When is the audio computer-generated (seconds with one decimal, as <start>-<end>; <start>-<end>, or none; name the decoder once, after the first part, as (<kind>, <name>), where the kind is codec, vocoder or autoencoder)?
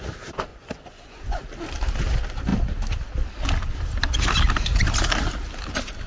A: 0.5-1.4 (vocoder, Vocos)